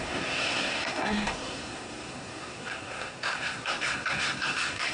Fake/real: fake